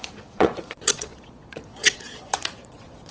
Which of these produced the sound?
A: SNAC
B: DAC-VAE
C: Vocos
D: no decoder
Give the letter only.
C